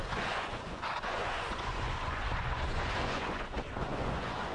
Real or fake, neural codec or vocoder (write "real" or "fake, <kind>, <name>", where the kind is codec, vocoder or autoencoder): fake, vocoder, Vocos